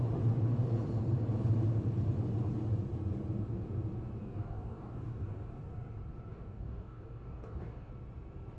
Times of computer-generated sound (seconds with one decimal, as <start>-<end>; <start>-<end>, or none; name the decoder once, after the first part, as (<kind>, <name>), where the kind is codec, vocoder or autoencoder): 4.2-5.5 (codec, DAC); 6.3-7.9